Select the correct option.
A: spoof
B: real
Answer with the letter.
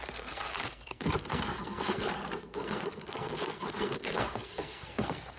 A